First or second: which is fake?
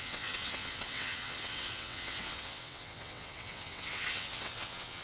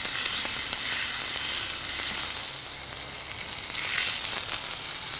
first